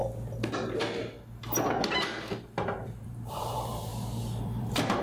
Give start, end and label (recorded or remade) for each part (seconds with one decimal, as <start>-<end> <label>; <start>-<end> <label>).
0.0-3.0 recorded; 3.0-3.9 remade; 3.9-4.4 recorded; 4.4-5.0 remade